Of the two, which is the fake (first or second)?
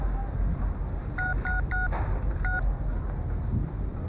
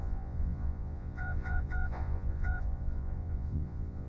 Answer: second